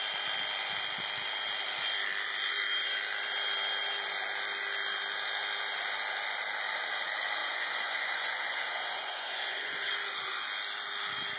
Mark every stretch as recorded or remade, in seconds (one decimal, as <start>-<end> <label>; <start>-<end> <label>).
0.0-7.4 recorded; 7.4-9.9 remade; 9.9-11.4 recorded